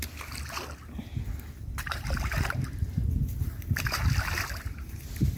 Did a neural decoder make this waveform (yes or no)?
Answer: no